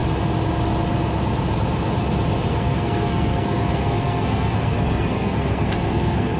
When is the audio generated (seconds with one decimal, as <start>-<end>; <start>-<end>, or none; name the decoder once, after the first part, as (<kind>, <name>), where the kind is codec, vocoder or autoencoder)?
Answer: 2.5-6.4 (codec, SNAC)